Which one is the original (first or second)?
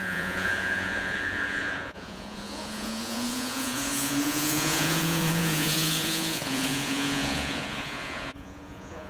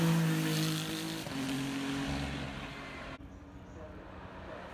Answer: second